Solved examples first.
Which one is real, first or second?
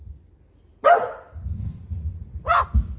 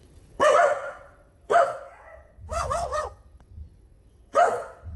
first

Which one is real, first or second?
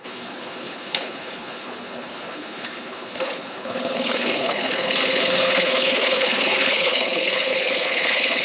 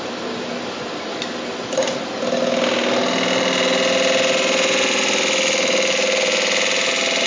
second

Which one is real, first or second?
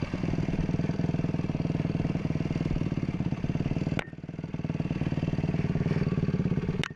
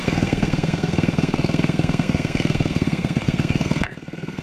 first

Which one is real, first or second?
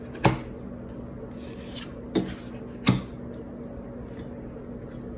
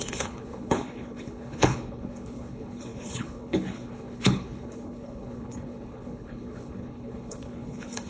first